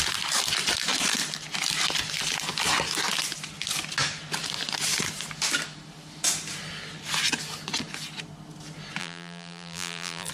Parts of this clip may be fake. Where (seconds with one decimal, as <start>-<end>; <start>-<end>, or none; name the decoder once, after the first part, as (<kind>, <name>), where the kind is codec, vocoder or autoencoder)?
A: 9.0-10.3 (vocoder, BigVGAN v2)